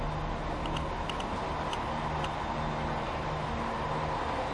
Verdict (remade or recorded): recorded